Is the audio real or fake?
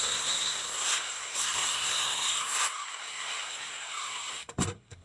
fake